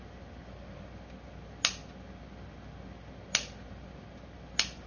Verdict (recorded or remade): recorded